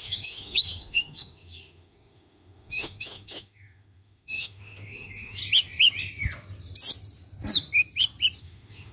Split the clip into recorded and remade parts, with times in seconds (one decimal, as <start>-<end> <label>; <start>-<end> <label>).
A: 0.0-5.4 remade; 5.4-8.4 recorded; 8.4-8.9 remade